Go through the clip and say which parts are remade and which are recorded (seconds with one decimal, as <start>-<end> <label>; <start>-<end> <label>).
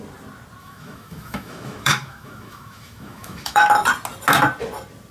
0.0-0.6 recorded; 0.6-3.7 remade; 3.7-5.1 recorded